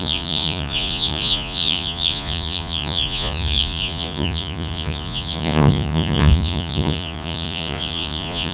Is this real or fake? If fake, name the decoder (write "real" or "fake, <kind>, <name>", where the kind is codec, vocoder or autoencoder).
fake, vocoder, Vocos